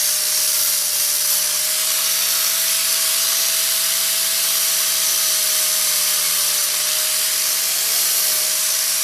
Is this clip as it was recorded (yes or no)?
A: no